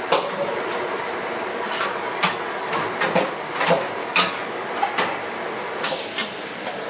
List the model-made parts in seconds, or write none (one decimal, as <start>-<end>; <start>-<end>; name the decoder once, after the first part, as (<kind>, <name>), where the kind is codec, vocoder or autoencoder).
1.5-2.8 (codec, DAC); 4.0-4.7

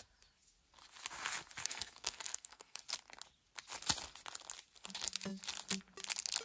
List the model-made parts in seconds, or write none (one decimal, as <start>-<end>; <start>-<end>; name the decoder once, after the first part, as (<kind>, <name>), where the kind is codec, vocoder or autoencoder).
1.6-2.8 (codec, SNAC)